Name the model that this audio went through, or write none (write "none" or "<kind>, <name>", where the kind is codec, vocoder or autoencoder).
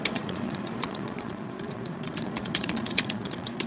vocoder, Vocos